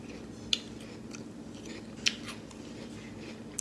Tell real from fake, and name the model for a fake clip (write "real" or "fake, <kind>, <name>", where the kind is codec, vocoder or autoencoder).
real